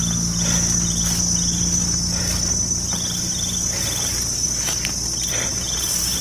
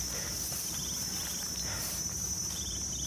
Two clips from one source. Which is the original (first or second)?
first